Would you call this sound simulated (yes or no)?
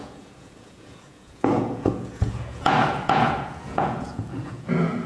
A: yes